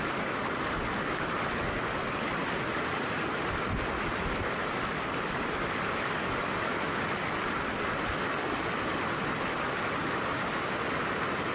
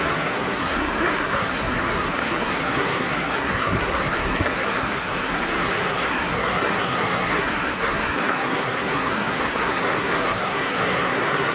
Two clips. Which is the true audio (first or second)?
first